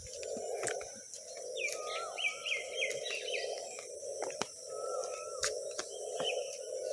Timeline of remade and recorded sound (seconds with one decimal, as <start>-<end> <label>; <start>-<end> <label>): 0.0-6.9 recorded